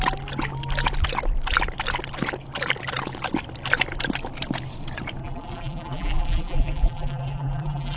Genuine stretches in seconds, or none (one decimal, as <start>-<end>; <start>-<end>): 0.0-5.2